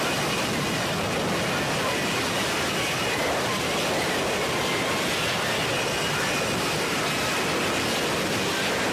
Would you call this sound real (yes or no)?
yes